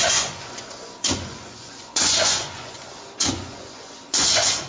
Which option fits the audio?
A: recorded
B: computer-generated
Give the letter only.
B